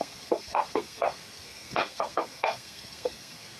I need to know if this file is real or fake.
fake